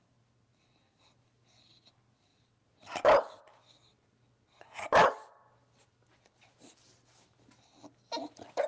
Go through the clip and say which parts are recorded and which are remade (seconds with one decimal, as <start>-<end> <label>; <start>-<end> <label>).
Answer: 0.0-8.7 recorded